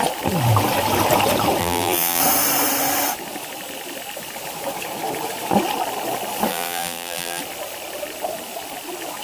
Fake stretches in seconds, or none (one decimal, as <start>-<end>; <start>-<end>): 1.6-2.2; 6.5-7.4